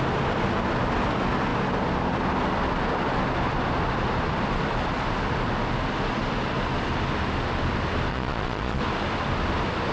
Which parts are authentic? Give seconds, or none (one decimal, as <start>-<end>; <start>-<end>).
0.0-8.1; 8.8-9.9